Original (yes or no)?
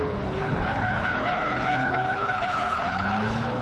no